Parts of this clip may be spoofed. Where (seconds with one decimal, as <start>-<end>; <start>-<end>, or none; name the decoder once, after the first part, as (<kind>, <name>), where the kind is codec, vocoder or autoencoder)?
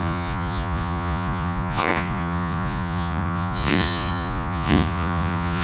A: 0.0-5.6 (vocoder, Vocos)